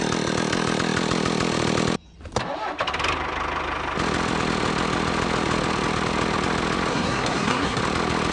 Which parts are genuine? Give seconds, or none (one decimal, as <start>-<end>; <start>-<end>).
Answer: 0.0-6.9; 7.8-8.3